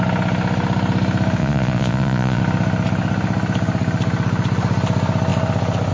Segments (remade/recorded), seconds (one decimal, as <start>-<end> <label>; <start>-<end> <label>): 0.0-1.4 recorded; 1.4-2.4 remade; 2.4-5.9 recorded